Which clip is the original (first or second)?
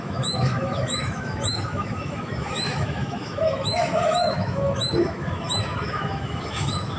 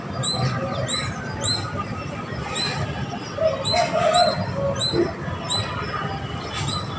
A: second